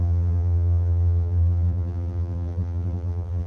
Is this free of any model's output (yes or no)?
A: no